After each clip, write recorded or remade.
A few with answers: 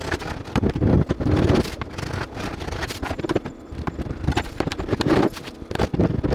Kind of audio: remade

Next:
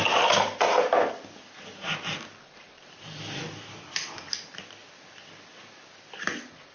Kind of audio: recorded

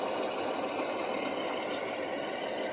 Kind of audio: recorded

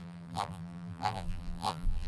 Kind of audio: remade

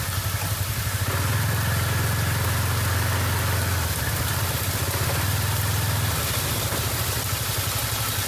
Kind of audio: recorded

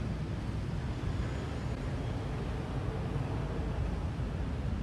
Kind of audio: recorded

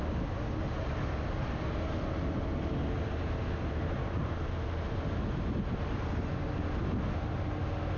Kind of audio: recorded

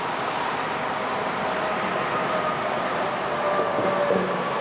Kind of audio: recorded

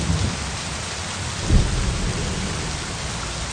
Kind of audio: recorded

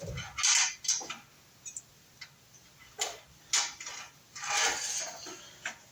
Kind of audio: recorded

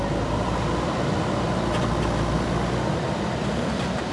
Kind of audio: remade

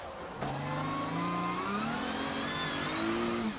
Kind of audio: recorded